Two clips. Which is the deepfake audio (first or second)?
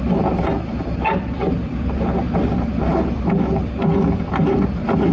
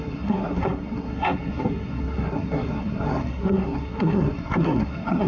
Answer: second